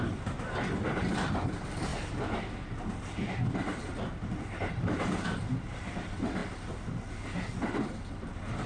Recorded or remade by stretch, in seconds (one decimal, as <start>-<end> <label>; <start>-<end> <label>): 0.0-1.9 remade; 1.9-4.6 recorded; 4.6-6.4 remade; 6.4-7.8 recorded; 7.8-8.7 remade